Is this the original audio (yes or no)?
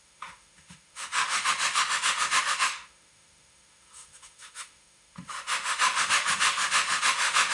no